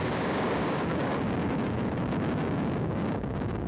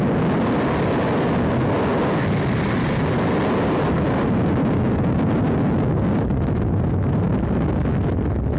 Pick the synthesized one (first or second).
first